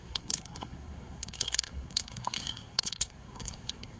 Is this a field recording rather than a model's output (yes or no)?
no